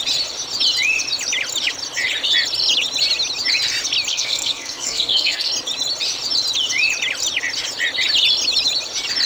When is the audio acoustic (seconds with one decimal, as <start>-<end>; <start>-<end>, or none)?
0.0-4.1; 5.5-9.3